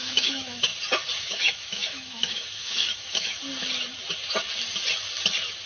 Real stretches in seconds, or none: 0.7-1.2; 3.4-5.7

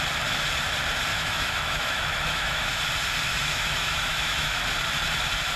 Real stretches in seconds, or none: 0.0-1.1; 2.8-3.3; 4.6-5.6

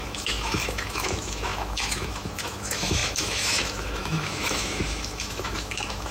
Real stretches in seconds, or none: none

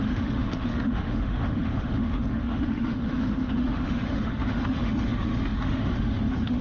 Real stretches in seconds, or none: none

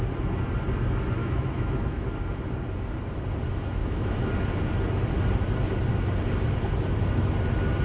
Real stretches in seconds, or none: 0.0-1.2; 2.1-3.8; 4.3-7.8

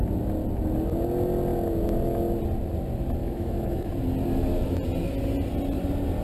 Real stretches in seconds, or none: 0.0-3.2; 3.9-6.2

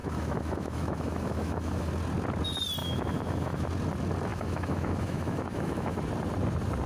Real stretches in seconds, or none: 1.9-2.8; 3.7-4.3; 6.0-6.9

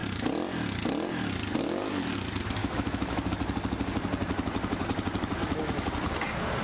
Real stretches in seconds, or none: 0.0-2.6; 3.3-5.4; 5.9-6.6